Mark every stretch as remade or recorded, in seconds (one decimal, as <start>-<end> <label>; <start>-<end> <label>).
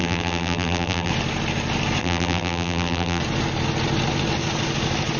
0.0-1.1 remade; 1.1-2.0 recorded; 2.0-3.2 remade; 3.2-5.2 recorded